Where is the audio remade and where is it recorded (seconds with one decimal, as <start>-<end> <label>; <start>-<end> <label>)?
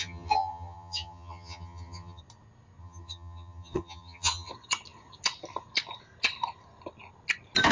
0.0-2.2 remade; 2.2-2.8 recorded; 2.8-4.5 remade; 4.5-7.7 recorded